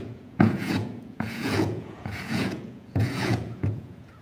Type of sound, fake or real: fake